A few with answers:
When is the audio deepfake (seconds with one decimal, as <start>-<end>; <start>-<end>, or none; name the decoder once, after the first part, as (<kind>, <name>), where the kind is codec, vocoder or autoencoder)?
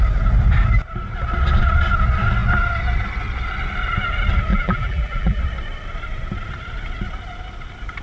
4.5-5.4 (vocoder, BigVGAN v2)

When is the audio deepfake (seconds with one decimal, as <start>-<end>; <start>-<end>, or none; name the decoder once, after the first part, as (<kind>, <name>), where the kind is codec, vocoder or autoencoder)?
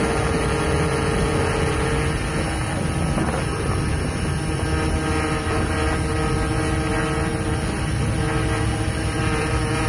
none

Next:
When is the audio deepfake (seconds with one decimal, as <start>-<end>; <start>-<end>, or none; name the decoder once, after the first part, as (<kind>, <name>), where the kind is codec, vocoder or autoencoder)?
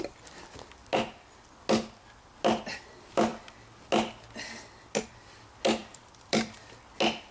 5.8-6.6 (vocoder, BigVGAN v2)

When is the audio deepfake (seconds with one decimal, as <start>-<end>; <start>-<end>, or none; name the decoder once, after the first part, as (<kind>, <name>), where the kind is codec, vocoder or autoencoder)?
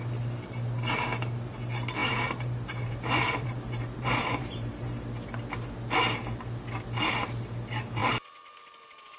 2.0-5.0 (vocoder, BigVGAN v2)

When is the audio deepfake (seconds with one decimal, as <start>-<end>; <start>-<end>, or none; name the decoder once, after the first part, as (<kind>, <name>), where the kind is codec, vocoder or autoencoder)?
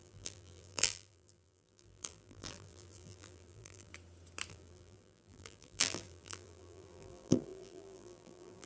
0.0-3.9 (vocoder, BigVGAN v2); 4.5-8.7